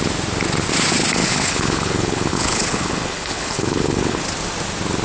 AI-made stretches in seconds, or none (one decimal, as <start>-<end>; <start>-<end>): 1.2-4.2